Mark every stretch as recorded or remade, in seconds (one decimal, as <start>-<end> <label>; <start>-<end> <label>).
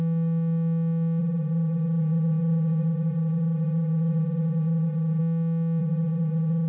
0.0-1.2 recorded; 1.2-5.2 remade; 5.2-5.8 recorded; 5.8-6.7 remade